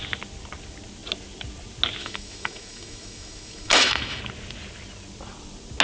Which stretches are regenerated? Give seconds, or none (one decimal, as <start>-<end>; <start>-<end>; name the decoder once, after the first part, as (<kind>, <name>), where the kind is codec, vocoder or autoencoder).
2.0-4.2 (autoencoder, DAC-VAE)

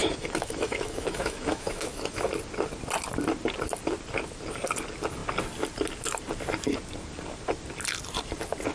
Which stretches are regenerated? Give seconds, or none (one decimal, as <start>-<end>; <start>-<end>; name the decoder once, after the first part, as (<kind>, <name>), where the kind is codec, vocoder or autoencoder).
0.0-2.3 (autoencoder, DAC-VAE)